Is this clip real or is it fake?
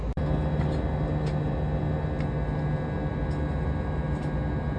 real